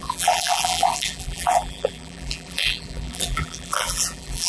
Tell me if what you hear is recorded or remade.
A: remade